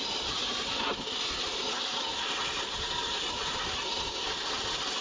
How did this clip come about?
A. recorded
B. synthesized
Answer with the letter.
A